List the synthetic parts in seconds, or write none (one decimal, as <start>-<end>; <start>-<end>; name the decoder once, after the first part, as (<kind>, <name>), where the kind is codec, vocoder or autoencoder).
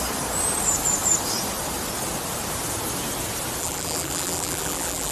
3.6-5.1 (vocoder, BigVGAN v2)